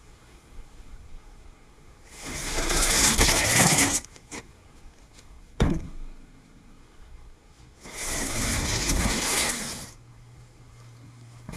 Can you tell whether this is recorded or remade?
remade